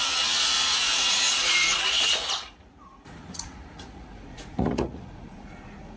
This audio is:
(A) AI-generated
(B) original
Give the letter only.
A